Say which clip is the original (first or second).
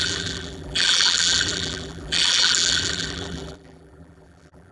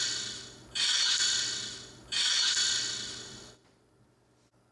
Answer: second